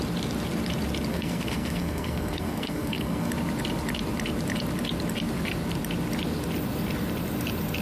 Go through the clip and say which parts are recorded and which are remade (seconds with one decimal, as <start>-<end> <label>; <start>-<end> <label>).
0.0-1.1 recorded; 1.1-3.3 remade; 3.3-7.8 recorded